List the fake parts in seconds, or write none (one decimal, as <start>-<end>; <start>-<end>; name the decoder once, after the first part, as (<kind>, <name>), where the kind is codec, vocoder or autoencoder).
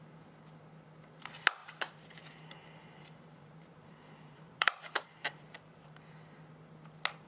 1.6-6.0 (vocoder, BigVGAN v2)